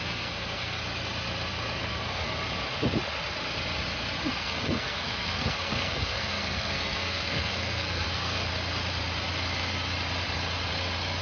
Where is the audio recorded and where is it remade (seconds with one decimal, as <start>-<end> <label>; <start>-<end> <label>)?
0.0-0.8 remade; 0.8-1.9 recorded; 1.9-2.3 remade; 2.3-4.3 recorded; 4.3-8.5 remade; 8.5-11.2 recorded